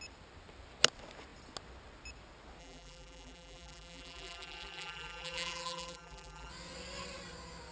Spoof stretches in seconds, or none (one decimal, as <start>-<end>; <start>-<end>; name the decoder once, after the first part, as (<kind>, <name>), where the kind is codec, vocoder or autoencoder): 2.6-6.5 (vocoder, BigVGAN v2)